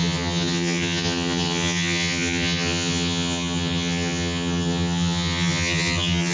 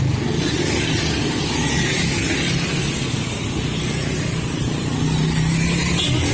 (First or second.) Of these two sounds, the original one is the second